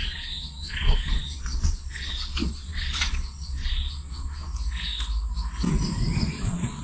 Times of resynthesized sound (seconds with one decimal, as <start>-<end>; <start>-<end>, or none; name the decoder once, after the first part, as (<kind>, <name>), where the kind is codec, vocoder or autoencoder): 0.0-4.5 (vocoder, Vocos); 6.2-6.8